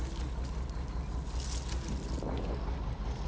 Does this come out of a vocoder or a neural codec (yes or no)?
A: no